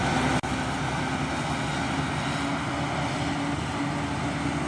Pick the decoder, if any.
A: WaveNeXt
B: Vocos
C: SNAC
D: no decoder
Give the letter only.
D